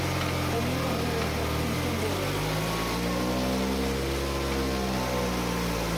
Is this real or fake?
real